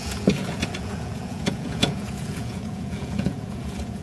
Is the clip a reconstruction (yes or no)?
yes